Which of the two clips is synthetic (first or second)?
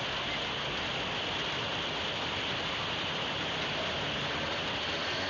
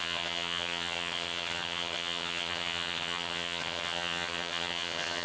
second